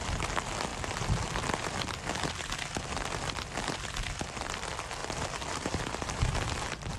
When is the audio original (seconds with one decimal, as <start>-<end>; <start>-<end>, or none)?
0.0-5.0; 6.2-7.0